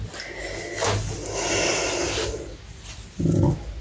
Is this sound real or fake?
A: real